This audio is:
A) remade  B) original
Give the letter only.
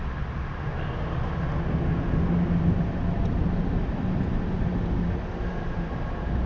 B